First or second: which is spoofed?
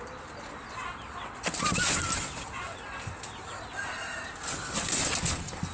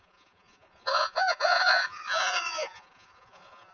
second